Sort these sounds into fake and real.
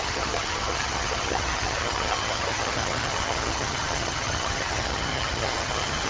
fake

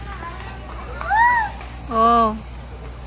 real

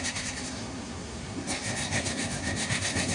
fake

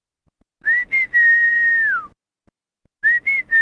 real